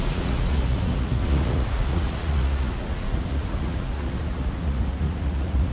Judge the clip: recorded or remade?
remade